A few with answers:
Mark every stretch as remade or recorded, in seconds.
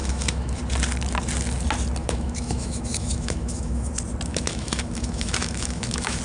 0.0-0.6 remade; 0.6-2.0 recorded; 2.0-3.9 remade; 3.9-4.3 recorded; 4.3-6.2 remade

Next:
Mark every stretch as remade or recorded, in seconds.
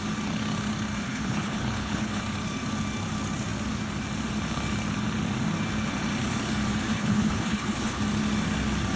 0.0-1.0 recorded; 1.0-2.2 remade; 2.2-6.9 recorded; 6.9-8.0 remade; 8.0-9.0 recorded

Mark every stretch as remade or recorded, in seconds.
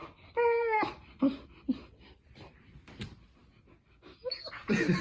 0.0-5.0 recorded